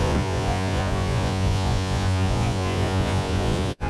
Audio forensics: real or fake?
fake